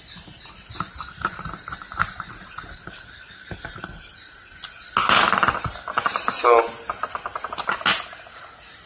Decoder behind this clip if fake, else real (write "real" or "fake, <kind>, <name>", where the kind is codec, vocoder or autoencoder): real